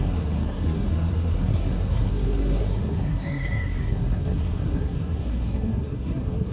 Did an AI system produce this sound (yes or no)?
yes